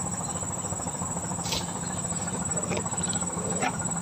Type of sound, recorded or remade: recorded